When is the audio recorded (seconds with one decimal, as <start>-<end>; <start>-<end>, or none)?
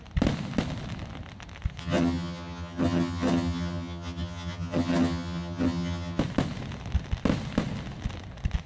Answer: 0.0-1.8; 6.2-8.7